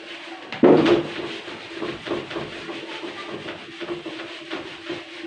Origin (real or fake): real